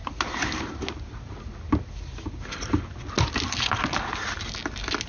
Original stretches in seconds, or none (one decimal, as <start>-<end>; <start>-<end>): 0.0-5.1